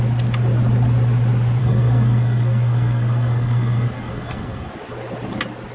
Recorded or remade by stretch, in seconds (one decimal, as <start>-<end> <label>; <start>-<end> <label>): 0.0-1.6 recorded; 1.6-4.7 remade; 4.7-5.7 recorded